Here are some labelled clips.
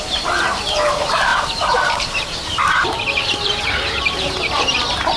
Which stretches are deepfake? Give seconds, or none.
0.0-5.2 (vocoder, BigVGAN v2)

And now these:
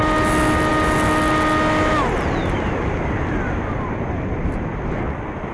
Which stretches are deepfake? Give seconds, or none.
2.4-4.5 (vocoder, BigVGAN v2)